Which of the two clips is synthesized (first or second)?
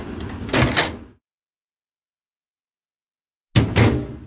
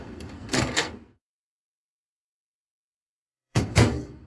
second